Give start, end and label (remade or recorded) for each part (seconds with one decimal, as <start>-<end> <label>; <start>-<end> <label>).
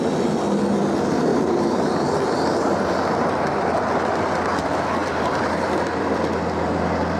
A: 0.0-5.0 recorded; 5.0-6.8 remade; 6.8-7.2 recorded